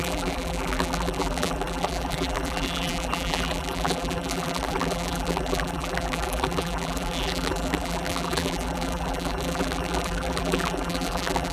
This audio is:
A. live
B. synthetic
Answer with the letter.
B